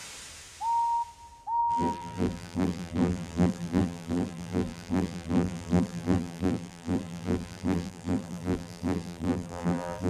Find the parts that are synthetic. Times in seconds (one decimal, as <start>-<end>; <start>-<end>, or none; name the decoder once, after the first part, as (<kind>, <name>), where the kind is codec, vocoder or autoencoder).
1.6-10.1 (vocoder, BigVGAN v2)